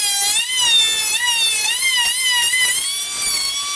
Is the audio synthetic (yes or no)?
no